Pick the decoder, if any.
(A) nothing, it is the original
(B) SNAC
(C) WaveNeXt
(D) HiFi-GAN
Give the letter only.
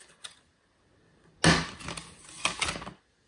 A